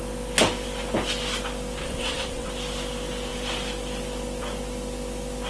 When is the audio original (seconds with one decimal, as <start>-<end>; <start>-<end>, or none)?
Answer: 0.0-1.8; 2.5-5.5